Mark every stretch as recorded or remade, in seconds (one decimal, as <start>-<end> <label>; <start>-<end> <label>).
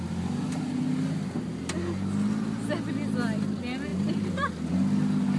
0.0-3.9 recorded; 3.9-4.7 remade; 4.7-5.4 recorded